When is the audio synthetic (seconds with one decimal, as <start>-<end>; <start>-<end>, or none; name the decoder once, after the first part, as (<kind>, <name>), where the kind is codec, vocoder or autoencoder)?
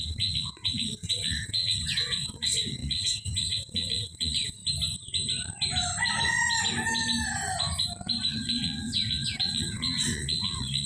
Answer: 0.0-4.6 (vocoder, WaveNeXt); 8.3-10.9